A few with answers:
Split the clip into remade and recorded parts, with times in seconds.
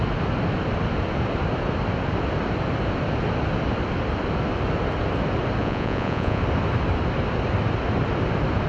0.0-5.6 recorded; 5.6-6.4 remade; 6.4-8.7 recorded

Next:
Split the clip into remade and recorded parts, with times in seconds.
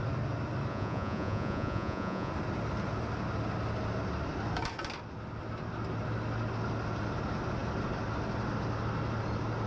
0.0-0.7 recorded; 0.7-2.3 remade; 2.3-9.7 recorded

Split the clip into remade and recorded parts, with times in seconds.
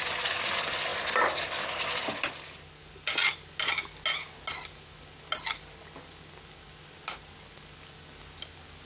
0.0-8.9 recorded